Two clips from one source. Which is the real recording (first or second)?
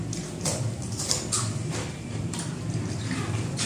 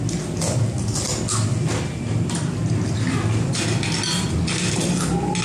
second